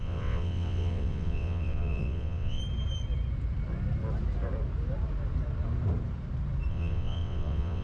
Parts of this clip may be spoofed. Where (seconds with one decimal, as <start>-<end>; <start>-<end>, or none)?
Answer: 0.0-2.6; 6.7-7.8